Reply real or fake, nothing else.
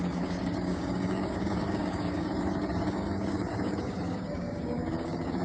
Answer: fake